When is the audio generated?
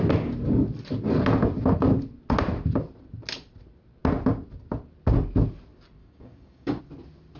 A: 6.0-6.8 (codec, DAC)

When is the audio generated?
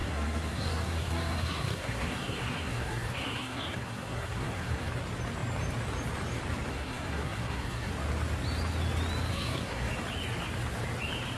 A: 0.0-4.9 (codec, SNAC); 6.7-7.9; 9.3-9.9